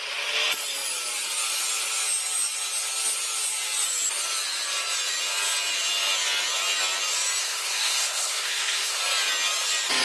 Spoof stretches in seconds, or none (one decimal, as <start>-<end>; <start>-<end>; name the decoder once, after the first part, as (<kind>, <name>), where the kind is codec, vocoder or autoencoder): 7.4-9.0 (codec, SNAC)